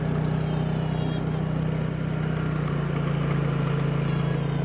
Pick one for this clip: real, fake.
real